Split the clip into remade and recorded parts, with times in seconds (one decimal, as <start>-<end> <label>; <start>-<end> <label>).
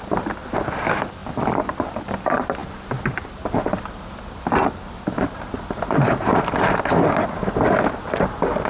0.0-2.6 recorded; 2.6-7.4 remade; 7.4-8.7 recorded